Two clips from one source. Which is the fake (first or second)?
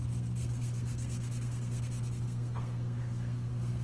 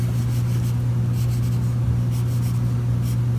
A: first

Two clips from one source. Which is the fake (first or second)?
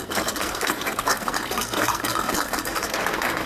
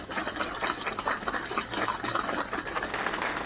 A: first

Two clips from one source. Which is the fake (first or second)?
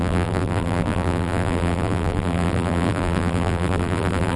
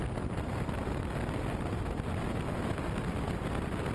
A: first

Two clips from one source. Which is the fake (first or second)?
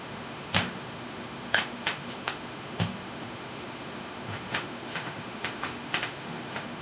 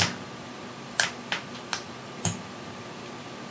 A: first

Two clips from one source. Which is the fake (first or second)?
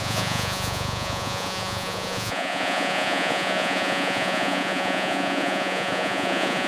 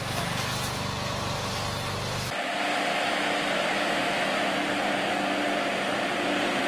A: first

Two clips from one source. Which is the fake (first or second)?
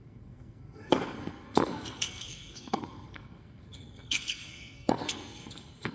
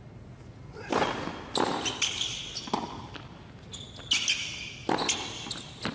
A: first